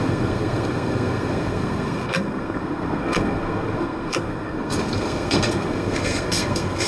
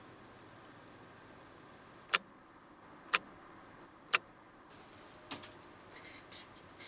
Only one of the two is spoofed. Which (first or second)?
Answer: first